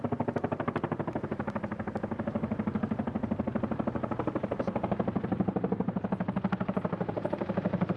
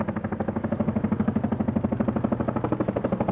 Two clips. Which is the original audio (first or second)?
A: second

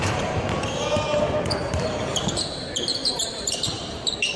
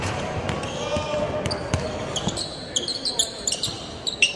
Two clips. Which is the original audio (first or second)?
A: second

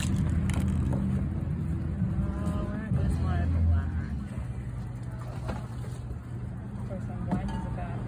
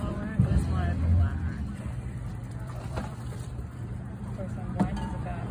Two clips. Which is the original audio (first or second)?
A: first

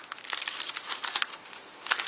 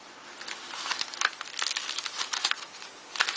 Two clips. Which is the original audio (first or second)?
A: second